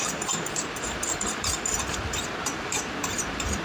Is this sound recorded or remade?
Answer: remade